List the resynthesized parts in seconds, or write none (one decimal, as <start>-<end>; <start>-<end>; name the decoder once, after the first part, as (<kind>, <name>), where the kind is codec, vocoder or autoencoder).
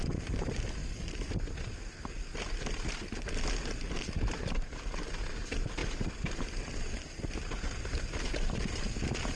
none